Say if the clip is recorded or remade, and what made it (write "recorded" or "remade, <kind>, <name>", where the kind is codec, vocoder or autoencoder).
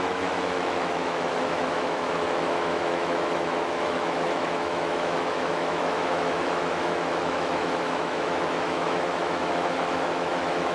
remade, autoencoder, DAC-VAE